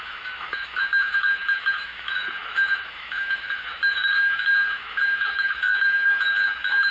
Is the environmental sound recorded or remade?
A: remade